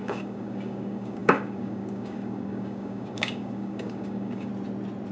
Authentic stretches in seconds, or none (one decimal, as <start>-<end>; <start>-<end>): 4.5-5.1